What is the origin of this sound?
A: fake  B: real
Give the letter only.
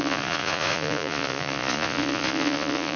A